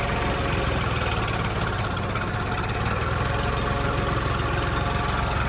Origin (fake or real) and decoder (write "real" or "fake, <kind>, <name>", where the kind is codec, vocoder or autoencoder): real